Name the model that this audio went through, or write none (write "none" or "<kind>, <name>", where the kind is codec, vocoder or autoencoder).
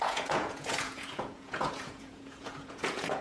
vocoder, Vocos